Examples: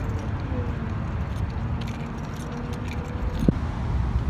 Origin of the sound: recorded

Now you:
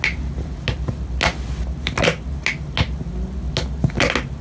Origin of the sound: recorded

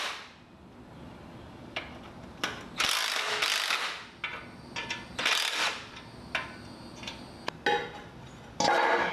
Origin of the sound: recorded